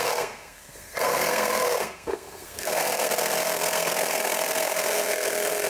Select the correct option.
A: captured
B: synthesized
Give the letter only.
B